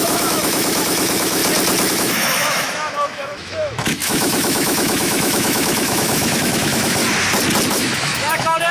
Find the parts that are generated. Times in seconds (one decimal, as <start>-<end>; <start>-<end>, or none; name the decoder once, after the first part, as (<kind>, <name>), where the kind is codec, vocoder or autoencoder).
0.0-1.4 (autoencoder, DAC-VAE); 1.9-7.0; 7.7-8.7